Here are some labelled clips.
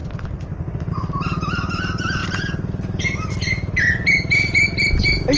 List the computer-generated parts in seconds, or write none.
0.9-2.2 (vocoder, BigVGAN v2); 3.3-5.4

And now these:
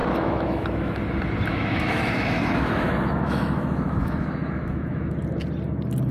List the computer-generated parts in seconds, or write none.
0.0-1.0 (autoencoder, DAC-VAE); 1.5-5.2

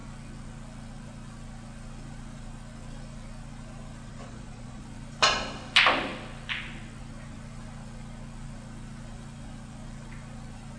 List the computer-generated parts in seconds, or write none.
4.1-4.8 (vocoder, Vocos)